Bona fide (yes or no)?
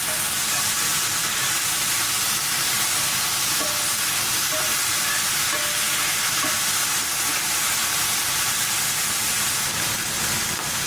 yes